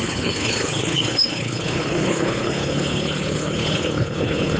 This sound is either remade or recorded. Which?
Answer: remade